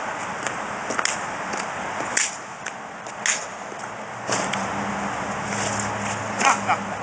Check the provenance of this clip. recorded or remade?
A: recorded